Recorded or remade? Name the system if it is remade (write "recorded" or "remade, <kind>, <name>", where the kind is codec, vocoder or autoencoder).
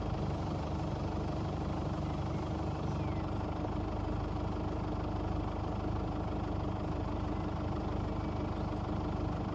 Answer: recorded